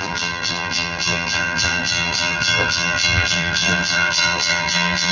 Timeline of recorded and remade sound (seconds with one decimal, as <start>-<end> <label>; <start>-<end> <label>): 0.0-5.1 remade